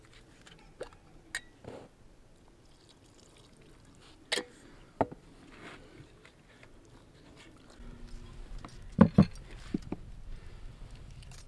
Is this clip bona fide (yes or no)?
yes